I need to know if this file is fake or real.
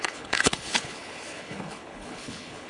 fake